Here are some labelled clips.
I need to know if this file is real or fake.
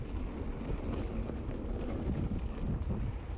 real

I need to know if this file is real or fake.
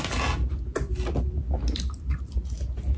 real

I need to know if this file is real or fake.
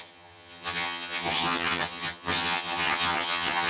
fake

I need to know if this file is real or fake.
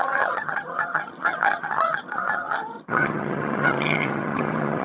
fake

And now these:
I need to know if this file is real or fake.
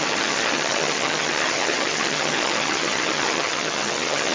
fake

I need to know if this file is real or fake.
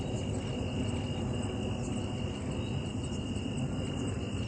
real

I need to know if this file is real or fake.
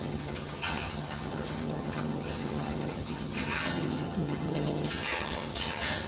fake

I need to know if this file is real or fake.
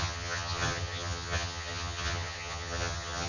fake